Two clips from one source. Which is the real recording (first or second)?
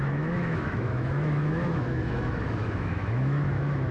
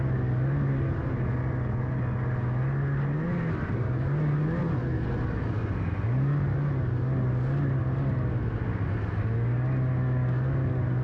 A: second